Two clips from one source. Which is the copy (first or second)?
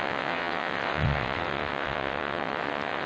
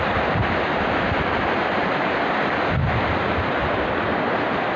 first